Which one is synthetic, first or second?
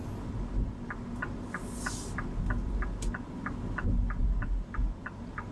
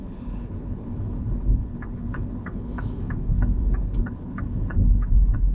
second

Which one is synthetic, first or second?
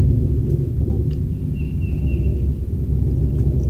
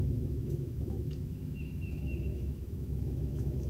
second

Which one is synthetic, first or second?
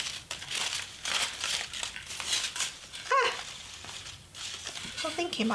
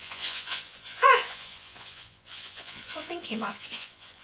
second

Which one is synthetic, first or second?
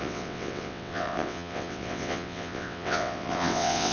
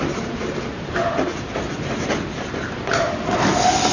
first